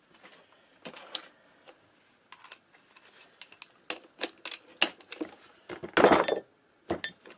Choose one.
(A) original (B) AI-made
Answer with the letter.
A